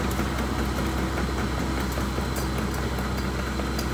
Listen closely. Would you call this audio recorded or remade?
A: recorded